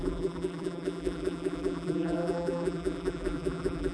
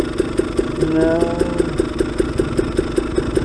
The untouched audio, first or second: second